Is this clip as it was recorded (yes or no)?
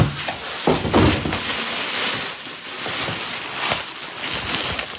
yes